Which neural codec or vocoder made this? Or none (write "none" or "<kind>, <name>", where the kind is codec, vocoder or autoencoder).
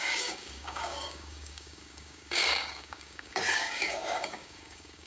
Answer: codec, DAC